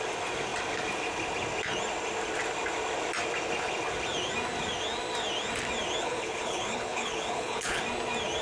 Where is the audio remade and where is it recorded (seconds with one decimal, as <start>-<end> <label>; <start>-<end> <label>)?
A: 0.0-6.0 recorded; 6.0-7.8 remade; 7.8-8.4 recorded